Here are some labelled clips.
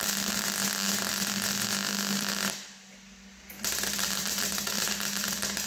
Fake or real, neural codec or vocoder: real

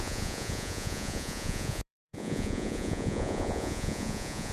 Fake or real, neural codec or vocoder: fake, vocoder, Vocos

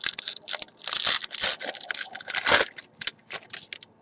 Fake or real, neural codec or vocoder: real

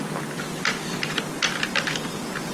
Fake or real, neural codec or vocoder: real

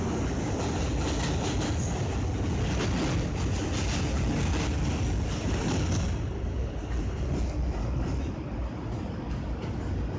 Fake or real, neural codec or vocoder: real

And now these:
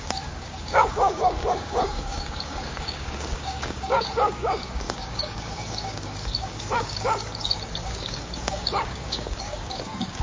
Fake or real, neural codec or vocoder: fake, codec, DAC